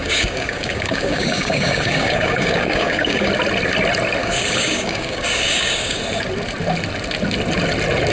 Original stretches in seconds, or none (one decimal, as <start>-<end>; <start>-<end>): 3.3-4.2; 6.0-8.1